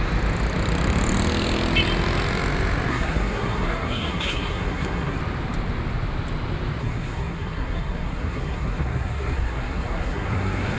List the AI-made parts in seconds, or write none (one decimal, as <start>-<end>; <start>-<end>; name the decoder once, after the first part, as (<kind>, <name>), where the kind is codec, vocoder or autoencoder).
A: 2.9-5.2 (codec, SNAC); 6.8-10.8